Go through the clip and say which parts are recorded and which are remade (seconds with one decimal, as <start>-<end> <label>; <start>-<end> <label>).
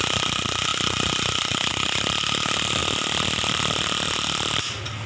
0.0-0.7 recorded; 0.7-1.7 remade; 1.7-5.1 recorded